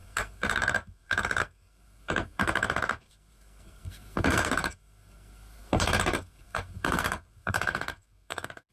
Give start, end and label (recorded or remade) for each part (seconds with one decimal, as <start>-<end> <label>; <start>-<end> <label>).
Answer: 0.0-8.7 remade